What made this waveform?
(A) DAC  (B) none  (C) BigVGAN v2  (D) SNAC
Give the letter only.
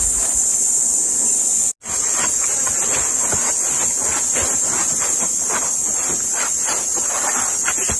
B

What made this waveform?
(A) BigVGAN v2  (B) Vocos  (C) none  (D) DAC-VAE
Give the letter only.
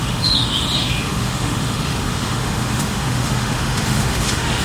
D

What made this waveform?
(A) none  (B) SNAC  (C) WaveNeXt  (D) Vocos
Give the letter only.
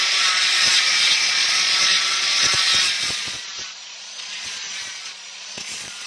D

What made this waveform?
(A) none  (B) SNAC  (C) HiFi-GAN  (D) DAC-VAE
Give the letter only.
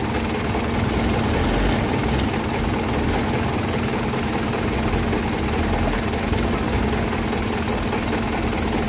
A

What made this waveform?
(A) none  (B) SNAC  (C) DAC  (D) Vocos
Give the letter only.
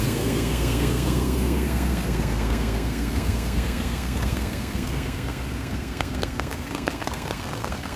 B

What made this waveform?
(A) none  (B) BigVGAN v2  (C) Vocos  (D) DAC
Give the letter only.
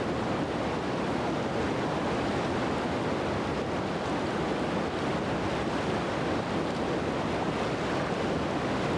A